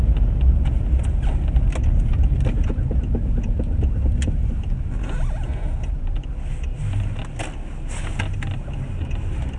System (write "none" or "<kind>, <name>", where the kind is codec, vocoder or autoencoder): none